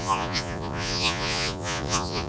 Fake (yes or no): yes